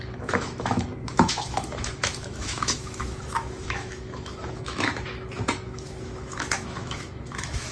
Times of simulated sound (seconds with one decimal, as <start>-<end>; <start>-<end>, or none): 0.0-7.7